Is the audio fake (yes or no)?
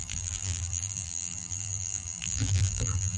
yes